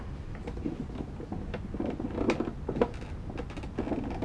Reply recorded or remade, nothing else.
recorded